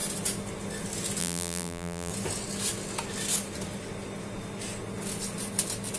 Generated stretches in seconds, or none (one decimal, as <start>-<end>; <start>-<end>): 1.2-2.1